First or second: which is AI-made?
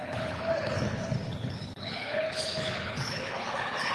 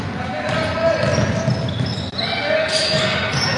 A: first